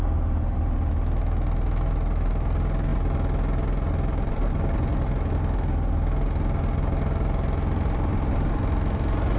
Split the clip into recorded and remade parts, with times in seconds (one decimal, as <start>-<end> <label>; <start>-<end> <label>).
0.0-9.4 recorded